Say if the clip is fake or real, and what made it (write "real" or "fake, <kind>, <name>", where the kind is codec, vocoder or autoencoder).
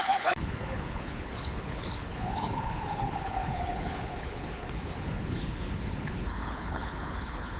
fake, codec, HILCodec